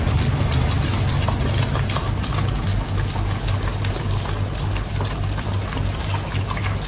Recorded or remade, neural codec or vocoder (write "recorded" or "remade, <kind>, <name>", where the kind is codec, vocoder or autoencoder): recorded